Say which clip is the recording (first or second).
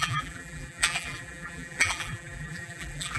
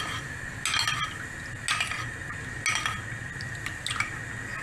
second